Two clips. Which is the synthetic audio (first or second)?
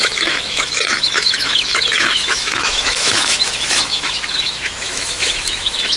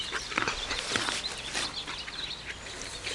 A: first